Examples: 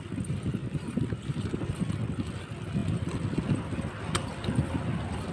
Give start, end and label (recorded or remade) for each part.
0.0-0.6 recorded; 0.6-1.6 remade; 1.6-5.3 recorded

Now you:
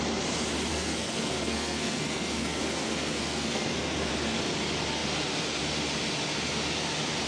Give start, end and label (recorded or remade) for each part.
0.0-0.7 recorded; 0.7-4.1 remade; 4.1-7.3 recorded